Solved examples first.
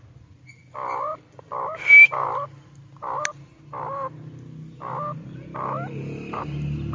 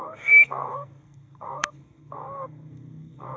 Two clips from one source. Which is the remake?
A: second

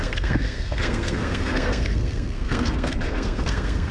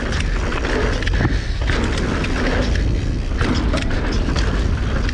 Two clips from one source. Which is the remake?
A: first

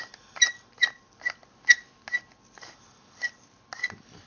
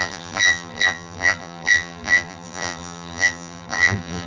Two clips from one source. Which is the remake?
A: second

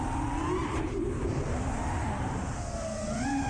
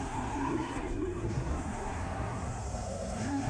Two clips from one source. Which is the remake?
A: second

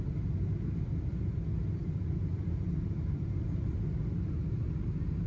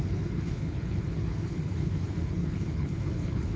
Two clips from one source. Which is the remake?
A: second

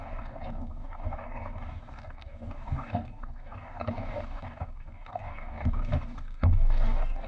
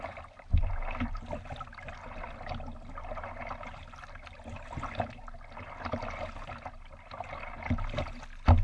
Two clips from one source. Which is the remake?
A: first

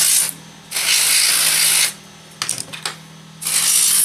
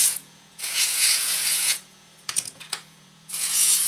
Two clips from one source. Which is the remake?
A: second